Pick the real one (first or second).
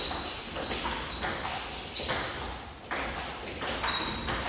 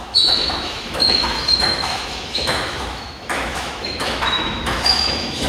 first